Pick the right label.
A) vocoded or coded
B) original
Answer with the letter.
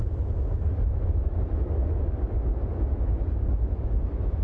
A